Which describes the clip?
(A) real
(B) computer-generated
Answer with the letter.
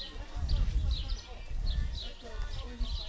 A